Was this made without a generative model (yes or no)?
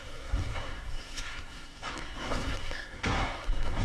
no